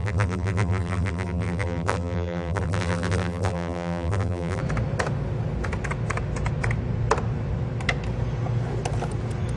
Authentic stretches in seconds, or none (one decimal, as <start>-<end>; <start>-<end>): 4.6-9.6